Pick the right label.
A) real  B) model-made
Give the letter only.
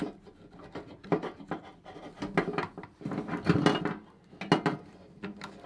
A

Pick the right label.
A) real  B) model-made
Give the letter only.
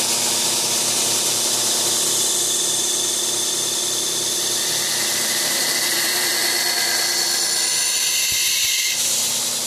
A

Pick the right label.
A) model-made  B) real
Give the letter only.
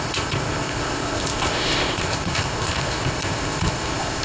A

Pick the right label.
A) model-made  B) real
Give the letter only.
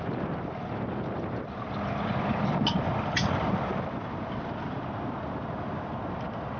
B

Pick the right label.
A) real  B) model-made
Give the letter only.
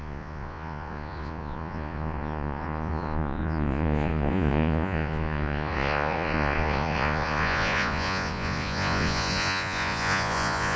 B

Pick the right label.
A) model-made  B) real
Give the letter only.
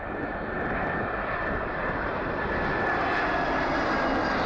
B